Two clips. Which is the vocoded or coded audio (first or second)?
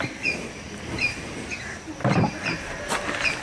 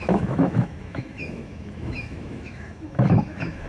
second